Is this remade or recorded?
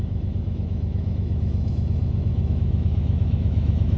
remade